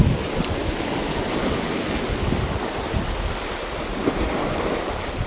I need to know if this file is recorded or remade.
recorded